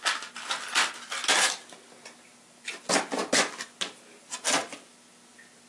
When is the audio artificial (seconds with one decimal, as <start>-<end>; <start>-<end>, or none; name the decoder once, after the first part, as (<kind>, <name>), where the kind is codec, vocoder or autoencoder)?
none